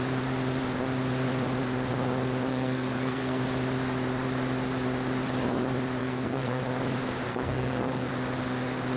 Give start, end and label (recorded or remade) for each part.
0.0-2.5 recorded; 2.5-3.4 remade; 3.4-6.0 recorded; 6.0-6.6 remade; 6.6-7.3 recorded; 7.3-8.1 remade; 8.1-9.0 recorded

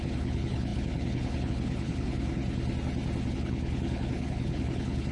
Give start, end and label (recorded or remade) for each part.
0.0-2.4 remade; 2.4-3.3 recorded; 3.3-5.1 remade